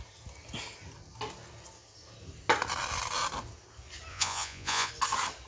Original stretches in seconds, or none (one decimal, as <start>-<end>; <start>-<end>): 0.0-4.1; 4.9-5.5